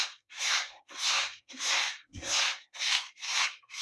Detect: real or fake fake